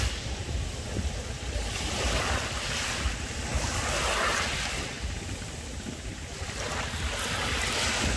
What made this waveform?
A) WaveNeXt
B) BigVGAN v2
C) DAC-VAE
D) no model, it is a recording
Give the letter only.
D